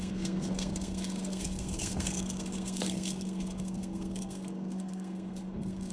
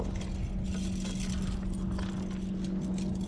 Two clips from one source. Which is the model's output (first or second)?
first